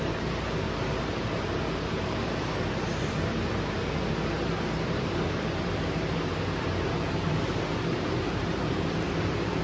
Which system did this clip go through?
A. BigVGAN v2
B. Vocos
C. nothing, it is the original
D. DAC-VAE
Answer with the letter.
A